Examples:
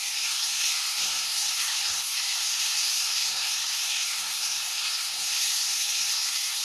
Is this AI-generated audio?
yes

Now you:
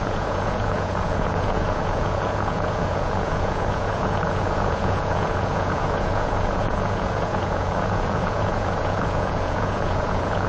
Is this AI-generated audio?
yes